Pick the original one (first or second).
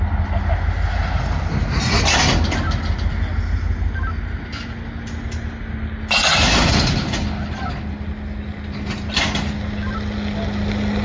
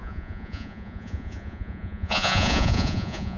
first